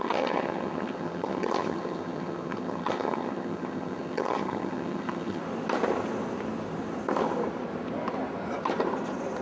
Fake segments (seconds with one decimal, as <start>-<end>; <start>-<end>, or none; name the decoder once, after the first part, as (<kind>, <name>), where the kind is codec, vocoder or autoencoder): 0.0-5.4 (vocoder, HiFi-GAN)